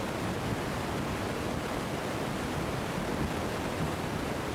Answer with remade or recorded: recorded